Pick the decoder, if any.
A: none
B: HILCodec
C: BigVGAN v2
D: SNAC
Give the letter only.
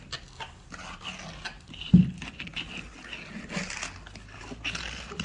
A